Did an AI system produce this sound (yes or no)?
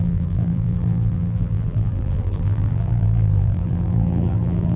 yes